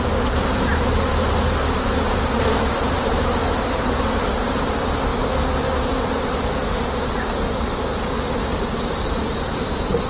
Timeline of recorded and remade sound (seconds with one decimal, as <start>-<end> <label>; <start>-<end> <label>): 0.0-5.1 remade; 5.1-8.9 recorded; 8.9-10.1 remade